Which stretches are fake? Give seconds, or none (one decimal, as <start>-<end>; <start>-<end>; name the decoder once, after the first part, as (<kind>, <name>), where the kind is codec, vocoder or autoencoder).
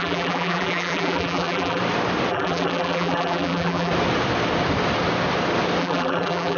0.0-1.8 (vocoder, BigVGAN v2); 2.3-3.9; 5.8-6.6